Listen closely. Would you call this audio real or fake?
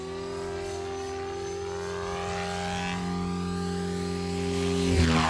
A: real